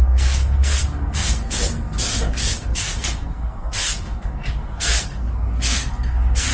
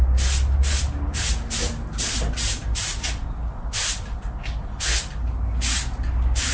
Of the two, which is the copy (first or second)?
first